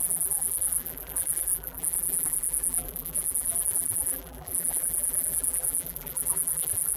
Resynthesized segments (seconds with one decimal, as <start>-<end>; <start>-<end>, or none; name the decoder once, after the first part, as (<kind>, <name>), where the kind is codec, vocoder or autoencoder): 0.0-7.0 (vocoder, BigVGAN v2)